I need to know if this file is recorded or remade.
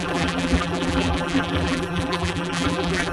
remade